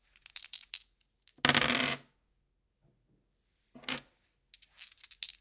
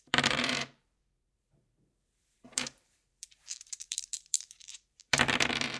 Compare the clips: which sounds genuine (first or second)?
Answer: first